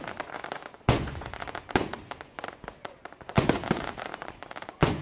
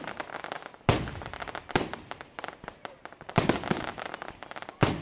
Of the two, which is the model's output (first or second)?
first